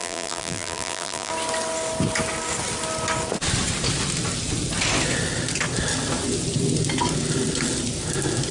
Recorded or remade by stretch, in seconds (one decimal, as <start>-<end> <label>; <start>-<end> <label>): 0.0-1.3 remade; 1.3-8.5 recorded